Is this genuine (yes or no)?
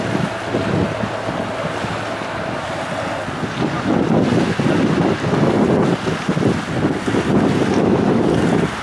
yes